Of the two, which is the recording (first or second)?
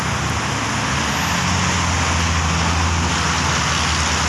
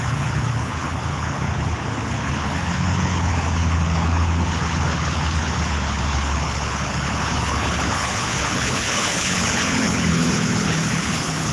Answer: first